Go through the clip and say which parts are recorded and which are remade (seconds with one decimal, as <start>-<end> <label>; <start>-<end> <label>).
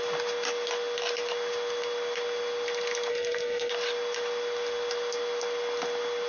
0.0-3.1 recorded; 3.1-3.7 remade; 3.7-6.3 recorded